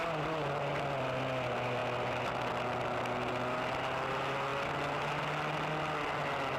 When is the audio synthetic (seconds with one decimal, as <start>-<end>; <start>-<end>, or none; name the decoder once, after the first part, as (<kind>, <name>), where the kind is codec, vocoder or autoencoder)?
none